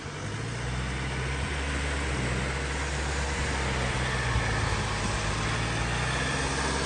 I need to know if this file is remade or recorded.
recorded